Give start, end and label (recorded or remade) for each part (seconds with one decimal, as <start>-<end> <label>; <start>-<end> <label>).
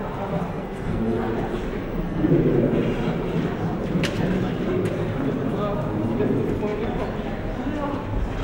0.0-0.5 recorded; 0.5-1.3 remade; 1.3-1.8 recorded; 1.8-2.3 remade; 2.3-8.4 recorded